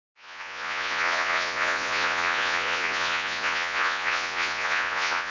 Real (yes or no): no